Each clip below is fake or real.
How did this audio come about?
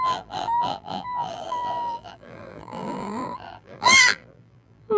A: fake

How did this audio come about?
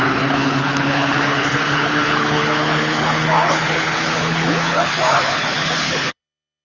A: fake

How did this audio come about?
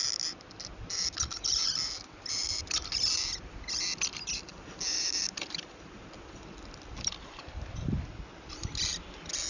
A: fake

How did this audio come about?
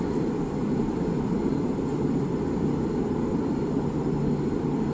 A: real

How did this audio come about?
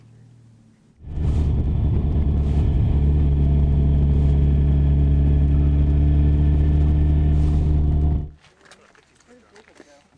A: real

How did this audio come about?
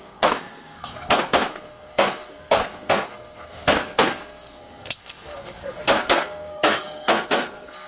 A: fake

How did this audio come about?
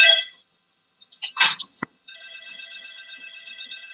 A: fake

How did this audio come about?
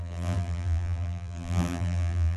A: fake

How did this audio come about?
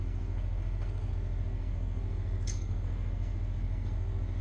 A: fake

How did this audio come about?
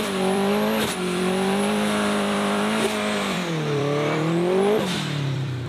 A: fake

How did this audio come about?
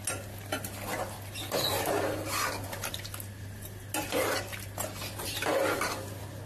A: real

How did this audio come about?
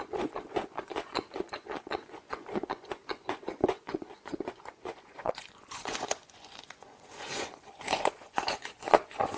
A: fake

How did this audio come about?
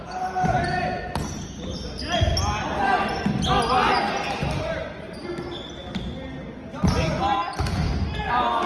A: real